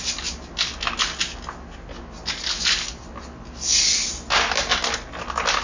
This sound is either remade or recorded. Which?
recorded